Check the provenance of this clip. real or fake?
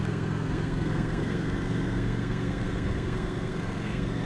fake